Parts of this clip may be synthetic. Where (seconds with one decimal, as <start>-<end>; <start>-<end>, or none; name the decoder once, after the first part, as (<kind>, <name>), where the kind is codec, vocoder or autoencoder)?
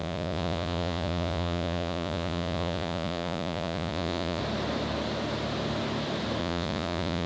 0.0-4.4 (vocoder, Vocos); 6.4-7.3